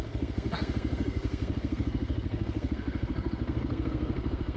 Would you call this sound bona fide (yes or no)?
no